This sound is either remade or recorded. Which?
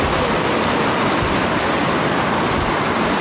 recorded